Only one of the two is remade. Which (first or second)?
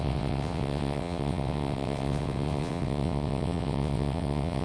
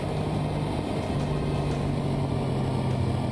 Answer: first